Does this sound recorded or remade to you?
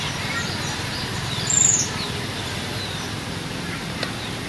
recorded